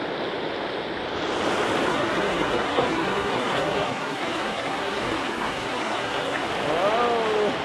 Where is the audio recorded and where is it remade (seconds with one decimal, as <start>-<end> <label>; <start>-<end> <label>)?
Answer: 0.0-1.9 recorded; 1.9-6.5 remade; 6.5-7.6 recorded